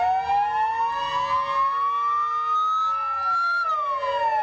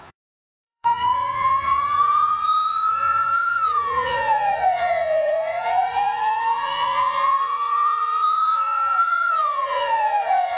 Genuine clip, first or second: first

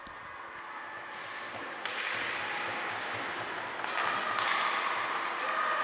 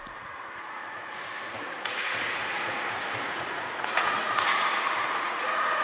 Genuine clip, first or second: first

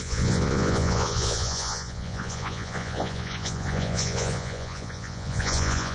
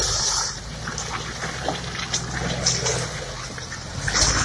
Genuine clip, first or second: second